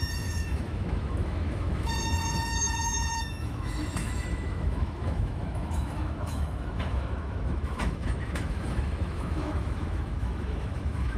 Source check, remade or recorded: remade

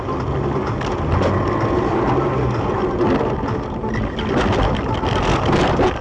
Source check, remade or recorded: recorded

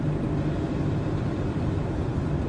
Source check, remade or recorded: remade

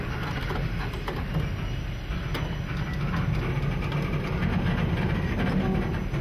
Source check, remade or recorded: recorded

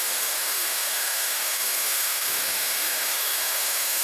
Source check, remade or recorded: remade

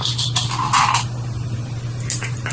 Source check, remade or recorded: recorded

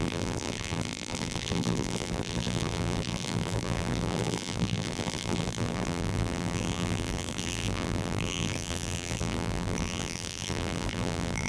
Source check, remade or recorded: remade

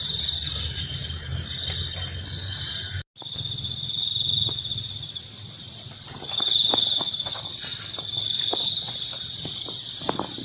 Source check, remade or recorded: recorded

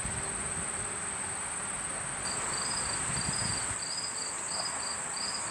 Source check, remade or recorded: recorded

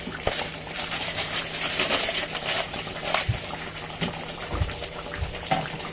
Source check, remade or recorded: remade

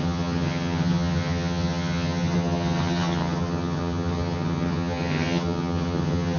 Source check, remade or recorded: remade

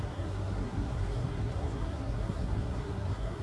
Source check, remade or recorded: remade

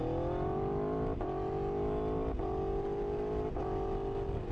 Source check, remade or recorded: recorded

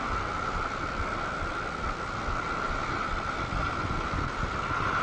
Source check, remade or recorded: recorded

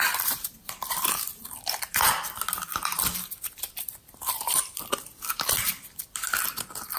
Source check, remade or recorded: remade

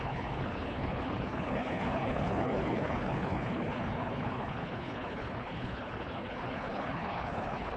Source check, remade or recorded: remade